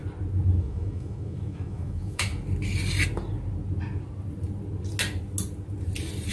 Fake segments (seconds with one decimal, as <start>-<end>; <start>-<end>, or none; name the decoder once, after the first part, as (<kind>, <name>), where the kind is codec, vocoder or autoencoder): 0.6-2.3 (autoencoder, DAC-VAE)